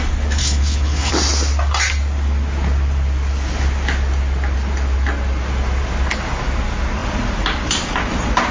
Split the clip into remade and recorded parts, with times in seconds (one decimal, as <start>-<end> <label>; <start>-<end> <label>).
0.0-0.4 recorded; 0.4-1.1 remade; 1.1-8.5 recorded